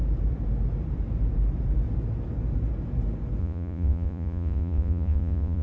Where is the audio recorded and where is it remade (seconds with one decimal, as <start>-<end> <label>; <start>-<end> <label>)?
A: 0.0-3.4 recorded; 3.4-5.6 remade